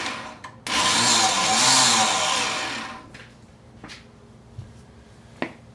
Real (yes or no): yes